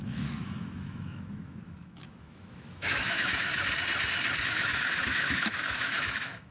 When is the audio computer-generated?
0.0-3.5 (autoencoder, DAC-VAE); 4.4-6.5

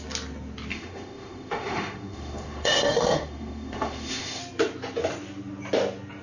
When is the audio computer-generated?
0.7-4.4 (autoencoder, DAC-VAE)